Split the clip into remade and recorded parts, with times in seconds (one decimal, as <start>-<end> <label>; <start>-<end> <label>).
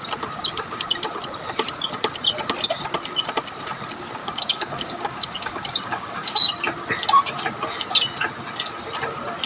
0.0-4.2 recorded; 4.2-6.6 remade; 6.6-9.5 recorded